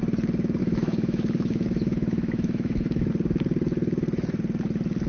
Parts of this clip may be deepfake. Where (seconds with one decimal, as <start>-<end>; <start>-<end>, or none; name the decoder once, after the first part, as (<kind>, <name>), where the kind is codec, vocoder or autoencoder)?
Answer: 0.6-3.1 (autoencoder, DAC-VAE)

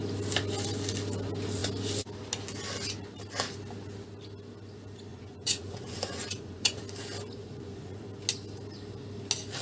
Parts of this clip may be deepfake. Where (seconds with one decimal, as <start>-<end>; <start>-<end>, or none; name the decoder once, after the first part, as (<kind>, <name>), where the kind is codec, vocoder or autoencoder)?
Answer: 5.1-6.8 (vocoder, Vocos); 7.4-8.0

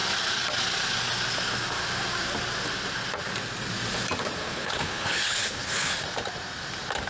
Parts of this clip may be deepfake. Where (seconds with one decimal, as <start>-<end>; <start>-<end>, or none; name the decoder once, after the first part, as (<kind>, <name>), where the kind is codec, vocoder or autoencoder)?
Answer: 4.4-5.9 (codec, HILCodec)

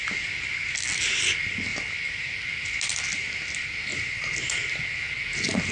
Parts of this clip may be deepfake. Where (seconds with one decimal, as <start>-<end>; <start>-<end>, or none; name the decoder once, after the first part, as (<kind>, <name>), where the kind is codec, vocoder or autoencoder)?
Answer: none

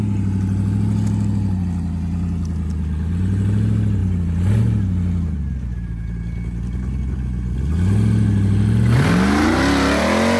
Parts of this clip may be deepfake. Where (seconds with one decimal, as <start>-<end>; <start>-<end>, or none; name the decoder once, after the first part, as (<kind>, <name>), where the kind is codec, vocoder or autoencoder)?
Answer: none

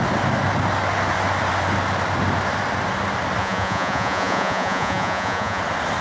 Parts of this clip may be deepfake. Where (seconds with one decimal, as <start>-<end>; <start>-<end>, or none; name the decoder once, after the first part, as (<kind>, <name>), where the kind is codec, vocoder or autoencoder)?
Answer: 3.4-5.6 (vocoder, Vocos)